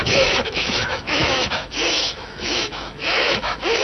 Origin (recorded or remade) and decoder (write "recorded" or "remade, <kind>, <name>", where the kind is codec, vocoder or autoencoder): remade, autoencoder, DAC-VAE